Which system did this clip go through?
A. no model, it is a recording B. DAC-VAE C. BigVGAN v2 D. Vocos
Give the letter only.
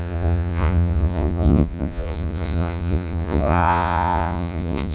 D